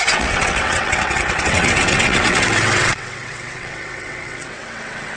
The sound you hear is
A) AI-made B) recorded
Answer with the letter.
A